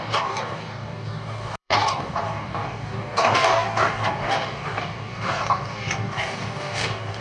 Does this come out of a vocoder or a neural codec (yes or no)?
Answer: yes